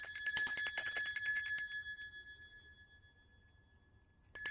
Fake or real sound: real